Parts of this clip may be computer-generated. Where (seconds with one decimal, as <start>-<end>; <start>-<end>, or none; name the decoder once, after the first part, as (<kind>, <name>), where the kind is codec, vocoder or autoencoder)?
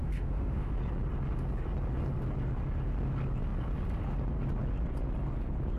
0.0-0.7 (autoencoder, DAC-VAE)